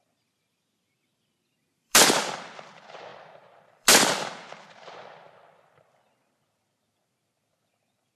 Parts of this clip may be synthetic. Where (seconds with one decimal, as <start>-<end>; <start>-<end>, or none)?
0.0-8.2